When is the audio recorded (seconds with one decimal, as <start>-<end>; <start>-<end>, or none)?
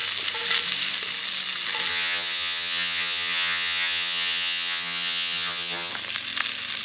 0.0-1.9; 5.9-6.8